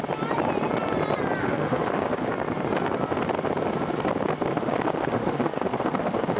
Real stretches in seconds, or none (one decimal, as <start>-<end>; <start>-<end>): 0.0-1.4; 2.3-4.5

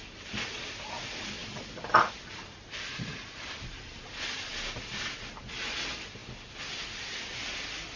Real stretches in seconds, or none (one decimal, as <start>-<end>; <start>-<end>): 0.0-8.0

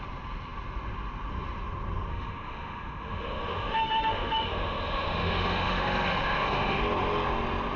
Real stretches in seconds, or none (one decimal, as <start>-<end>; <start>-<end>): 0.0-2.1; 6.8-7.8

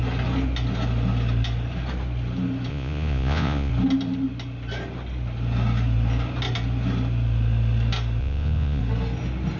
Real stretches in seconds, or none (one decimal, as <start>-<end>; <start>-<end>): 0.0-2.7; 3.7-8.2; 8.8-9.6

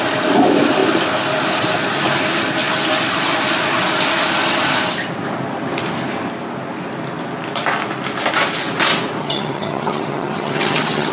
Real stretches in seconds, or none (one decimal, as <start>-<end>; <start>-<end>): 0.0-9.2